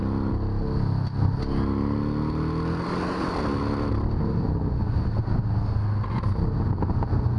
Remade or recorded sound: recorded